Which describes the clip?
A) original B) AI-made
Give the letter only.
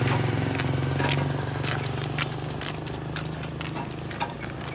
A